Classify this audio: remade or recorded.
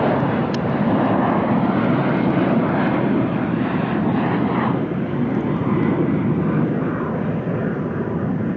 recorded